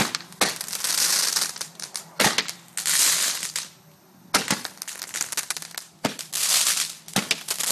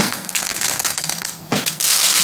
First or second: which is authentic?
first